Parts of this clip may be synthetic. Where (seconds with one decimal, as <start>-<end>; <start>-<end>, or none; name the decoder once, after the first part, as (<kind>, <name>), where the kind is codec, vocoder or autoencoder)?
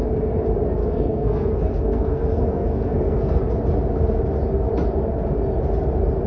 0.8-3.4 (codec, SNAC)